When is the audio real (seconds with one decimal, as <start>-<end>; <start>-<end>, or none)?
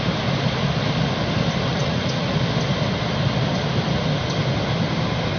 0.0-1.7; 2.3-5.4